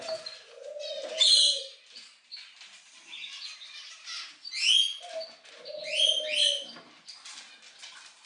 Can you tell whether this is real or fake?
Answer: real